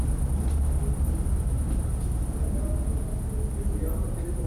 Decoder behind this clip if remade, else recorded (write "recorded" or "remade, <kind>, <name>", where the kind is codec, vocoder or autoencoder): recorded